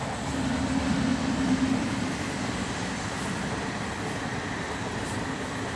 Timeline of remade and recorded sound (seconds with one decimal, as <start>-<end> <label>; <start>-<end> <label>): 0.0-5.8 recorded